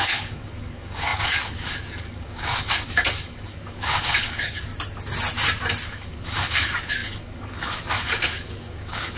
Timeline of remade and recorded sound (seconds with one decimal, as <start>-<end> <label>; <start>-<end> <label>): 0.0-4.7 remade; 4.7-5.8 recorded; 5.8-9.2 remade